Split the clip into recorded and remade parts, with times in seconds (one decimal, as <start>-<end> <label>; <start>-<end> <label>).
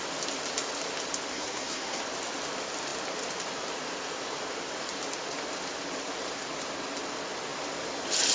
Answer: 0.0-1.3 recorded; 1.3-2.0 remade; 2.0-8.3 recorded